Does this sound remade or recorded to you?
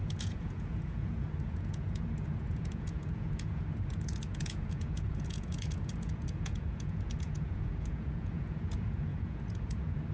remade